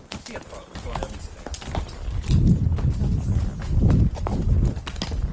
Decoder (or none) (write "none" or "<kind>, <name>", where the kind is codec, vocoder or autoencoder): none